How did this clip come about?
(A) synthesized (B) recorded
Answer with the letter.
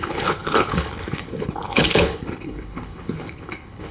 A